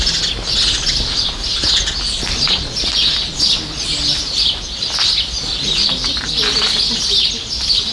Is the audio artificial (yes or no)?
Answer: no